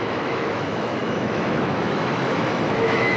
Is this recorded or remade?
remade